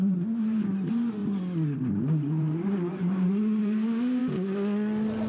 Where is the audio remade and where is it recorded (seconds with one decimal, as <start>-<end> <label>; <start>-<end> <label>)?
0.0-1.2 remade; 1.2-1.9 recorded; 1.9-4.2 remade; 4.2-5.3 recorded